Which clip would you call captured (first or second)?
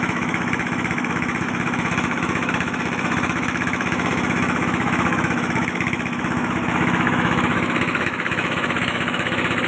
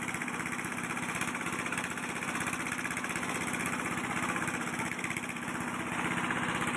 second